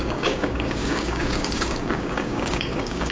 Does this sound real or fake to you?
fake